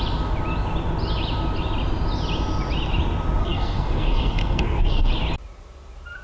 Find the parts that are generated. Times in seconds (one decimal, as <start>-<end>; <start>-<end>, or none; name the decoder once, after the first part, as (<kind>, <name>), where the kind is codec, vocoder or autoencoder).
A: 3.4-5.1 (codec, SNAC)